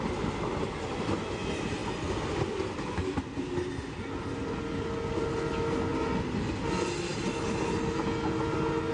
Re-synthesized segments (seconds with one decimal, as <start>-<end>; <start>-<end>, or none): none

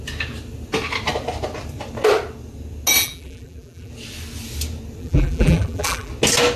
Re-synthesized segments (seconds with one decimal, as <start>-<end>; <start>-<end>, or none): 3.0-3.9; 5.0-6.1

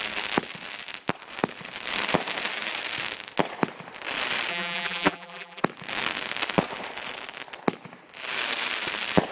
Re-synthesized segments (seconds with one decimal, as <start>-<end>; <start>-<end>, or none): 4.5-5.6

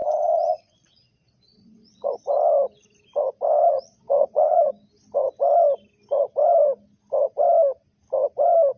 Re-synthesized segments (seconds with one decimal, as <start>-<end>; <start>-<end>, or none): 0.0-2.1; 3.7-4.7

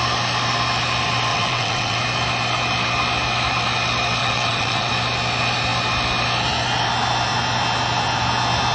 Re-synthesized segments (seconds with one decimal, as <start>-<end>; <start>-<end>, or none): 1.3-2.0; 4.2-4.9